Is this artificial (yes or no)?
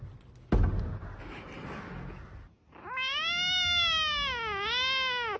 no